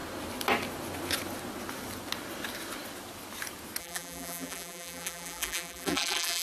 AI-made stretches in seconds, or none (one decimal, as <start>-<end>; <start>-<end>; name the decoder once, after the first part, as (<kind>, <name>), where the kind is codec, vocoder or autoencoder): 3.8-6.4 (vocoder, BigVGAN v2)